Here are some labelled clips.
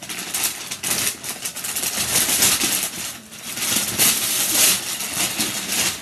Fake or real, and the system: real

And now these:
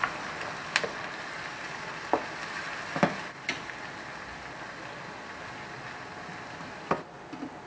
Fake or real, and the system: real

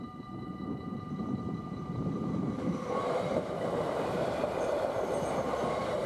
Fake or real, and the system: fake, vocoder, BigVGAN v2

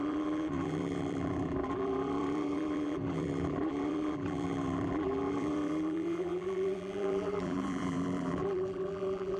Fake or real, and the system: fake, vocoder, BigVGAN v2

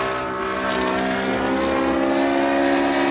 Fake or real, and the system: real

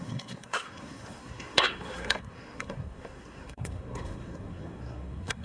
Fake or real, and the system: fake, codec, SNAC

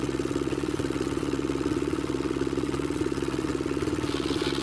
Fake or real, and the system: fake, vocoder, WaveNeXt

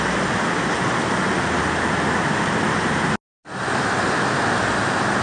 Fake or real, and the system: real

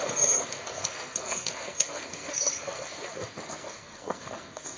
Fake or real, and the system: fake, codec, SNAC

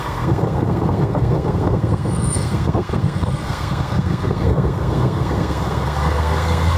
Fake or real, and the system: fake, codec, SNAC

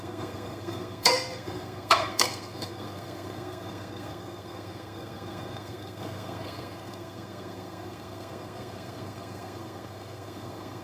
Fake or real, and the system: fake, codec, SNAC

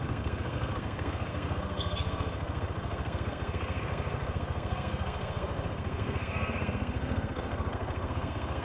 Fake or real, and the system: fake, codec, SNAC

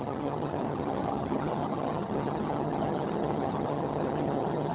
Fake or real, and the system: fake, vocoder, HiFi-GAN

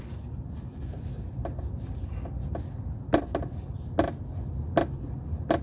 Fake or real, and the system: real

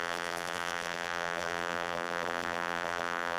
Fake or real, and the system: fake, vocoder, BigVGAN v2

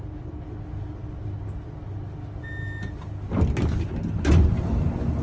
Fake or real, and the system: real